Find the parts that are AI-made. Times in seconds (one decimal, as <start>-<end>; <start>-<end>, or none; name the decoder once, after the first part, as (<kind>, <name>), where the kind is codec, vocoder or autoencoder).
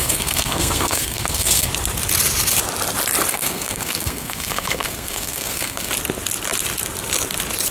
0.0-1.7 (codec, SNAC); 3.3-5.9